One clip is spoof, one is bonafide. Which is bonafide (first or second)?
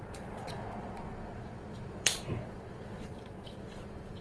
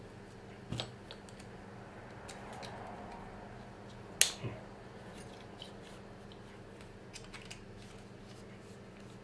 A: second